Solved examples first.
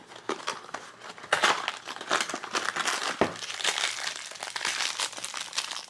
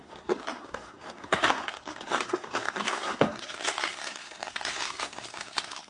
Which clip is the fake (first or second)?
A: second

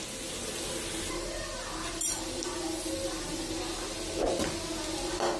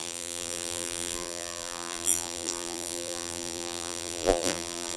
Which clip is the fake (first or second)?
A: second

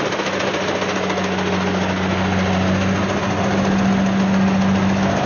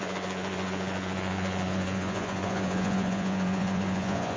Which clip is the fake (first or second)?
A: second